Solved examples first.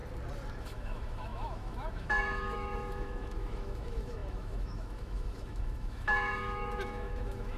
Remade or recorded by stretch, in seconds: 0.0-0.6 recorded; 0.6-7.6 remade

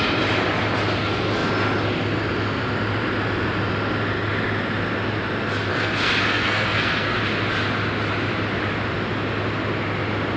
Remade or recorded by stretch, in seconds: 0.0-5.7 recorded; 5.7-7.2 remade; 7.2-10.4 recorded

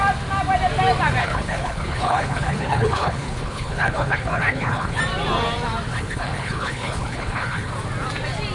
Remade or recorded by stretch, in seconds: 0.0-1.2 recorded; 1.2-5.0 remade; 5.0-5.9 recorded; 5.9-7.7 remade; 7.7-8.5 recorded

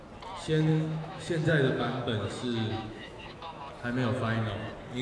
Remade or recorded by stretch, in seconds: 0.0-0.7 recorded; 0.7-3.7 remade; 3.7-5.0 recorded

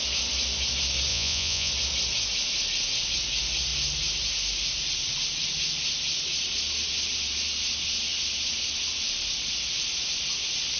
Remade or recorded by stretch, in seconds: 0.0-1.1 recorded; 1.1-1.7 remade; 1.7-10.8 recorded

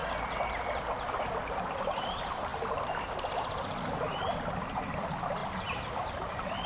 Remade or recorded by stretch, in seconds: 0.0-1.7 recorded; 1.7-5.4 remade; 5.4-6.3 recorded; 6.3-6.7 remade

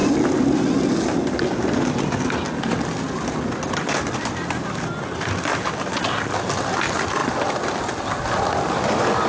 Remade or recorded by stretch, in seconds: 0.0-9.3 recorded

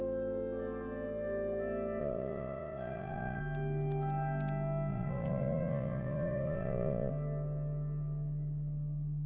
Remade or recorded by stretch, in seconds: 0.0-2.0 recorded; 2.0-3.4 remade; 3.4-4.9 recorded; 4.9-7.1 remade; 7.1-9.3 recorded